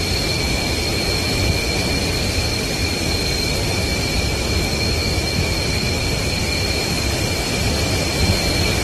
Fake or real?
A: real